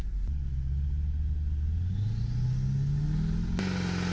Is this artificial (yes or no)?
no